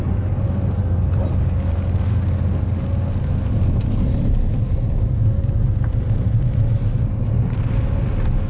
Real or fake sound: real